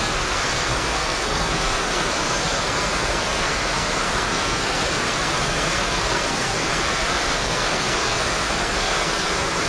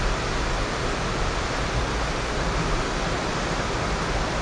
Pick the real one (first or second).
second